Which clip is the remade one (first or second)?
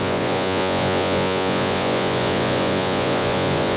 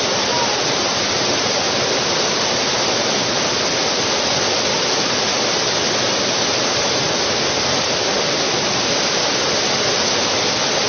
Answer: first